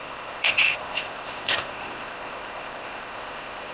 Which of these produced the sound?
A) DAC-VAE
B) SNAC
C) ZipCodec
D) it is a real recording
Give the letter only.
C